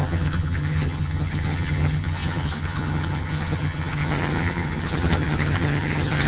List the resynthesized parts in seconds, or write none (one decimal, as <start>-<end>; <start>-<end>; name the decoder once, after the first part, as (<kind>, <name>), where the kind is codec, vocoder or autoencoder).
0.0-6.3 (vocoder, HiFi-GAN)